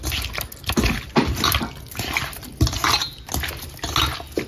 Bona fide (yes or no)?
yes